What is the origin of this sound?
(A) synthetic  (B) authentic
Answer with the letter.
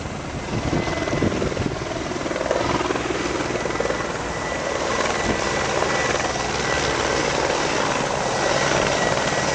B